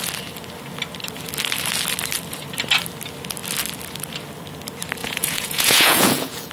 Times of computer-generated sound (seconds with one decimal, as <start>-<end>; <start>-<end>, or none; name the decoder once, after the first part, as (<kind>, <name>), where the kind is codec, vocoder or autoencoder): 5.0-6.5 (vocoder, Vocos)